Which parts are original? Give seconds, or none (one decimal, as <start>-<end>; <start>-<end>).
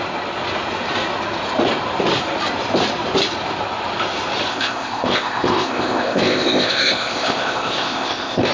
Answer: 0.0-4.5